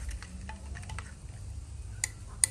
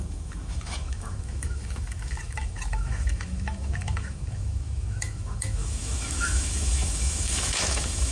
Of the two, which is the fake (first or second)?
second